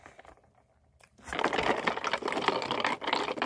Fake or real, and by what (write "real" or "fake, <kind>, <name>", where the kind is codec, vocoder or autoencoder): real